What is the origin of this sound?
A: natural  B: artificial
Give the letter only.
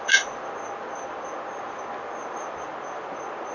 A